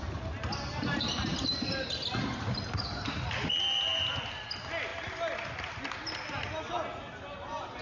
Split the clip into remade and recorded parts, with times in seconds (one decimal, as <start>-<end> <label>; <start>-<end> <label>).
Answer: 0.0-0.7 recorded; 0.7-2.1 remade; 2.1-7.8 recorded